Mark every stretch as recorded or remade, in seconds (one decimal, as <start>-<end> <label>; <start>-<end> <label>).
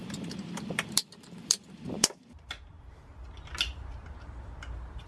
0.0-3.1 remade; 3.1-5.1 recorded